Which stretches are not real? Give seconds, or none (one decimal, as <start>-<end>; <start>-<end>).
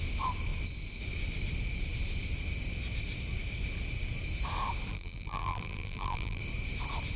4.9-6.4